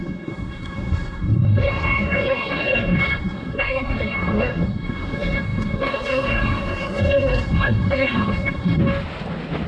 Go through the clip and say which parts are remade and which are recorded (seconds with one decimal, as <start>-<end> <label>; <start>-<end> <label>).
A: 0.0-8.8 remade; 8.8-9.7 recorded